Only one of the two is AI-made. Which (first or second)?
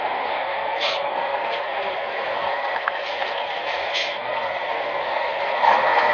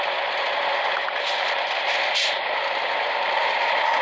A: first